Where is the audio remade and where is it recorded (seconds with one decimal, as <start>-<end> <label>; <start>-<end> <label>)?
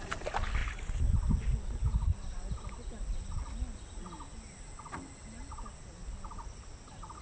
0.0-7.2 recorded